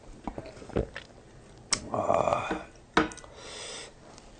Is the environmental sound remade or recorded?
recorded